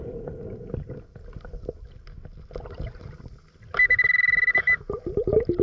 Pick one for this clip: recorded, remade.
recorded